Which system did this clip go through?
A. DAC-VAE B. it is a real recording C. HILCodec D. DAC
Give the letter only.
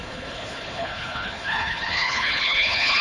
C